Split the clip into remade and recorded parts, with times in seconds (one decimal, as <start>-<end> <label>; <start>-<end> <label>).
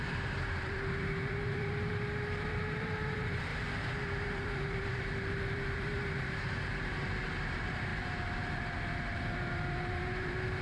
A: 0.0-3.5 remade; 3.5-4.2 recorded; 4.2-10.6 remade